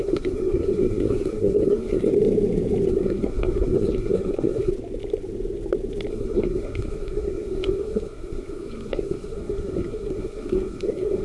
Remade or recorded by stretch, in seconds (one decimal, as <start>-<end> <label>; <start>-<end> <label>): 0.0-2.1 remade; 2.1-2.9 recorded; 2.9-4.7 remade; 4.7-6.1 recorded; 6.1-11.2 remade